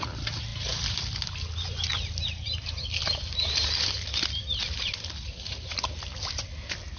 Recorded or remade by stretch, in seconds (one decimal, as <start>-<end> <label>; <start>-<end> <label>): 0.0-7.0 recorded